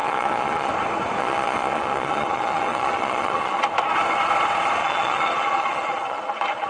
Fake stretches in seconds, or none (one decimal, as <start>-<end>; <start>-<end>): 0.0-0.7; 1.2-3.6; 4.8-6.7